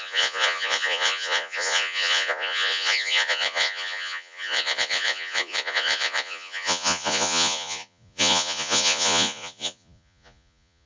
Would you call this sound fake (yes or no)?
yes